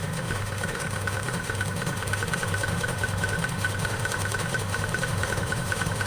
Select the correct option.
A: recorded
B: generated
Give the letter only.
B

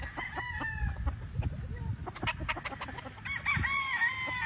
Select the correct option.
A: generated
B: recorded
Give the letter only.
B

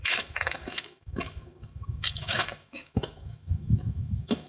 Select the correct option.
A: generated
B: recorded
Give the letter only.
A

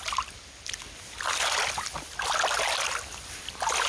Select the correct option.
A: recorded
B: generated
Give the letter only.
A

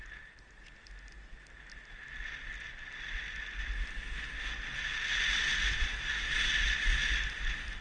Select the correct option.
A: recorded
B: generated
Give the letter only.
A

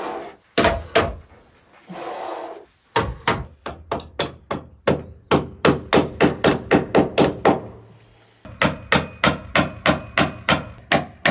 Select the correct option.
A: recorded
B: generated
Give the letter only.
A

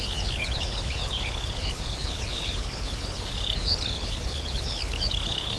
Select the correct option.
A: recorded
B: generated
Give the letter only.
B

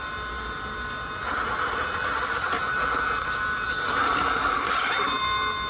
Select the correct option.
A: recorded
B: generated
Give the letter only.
A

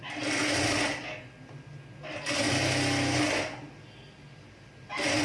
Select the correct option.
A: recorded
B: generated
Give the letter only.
A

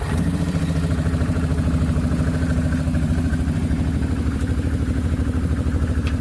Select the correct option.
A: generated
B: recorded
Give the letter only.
A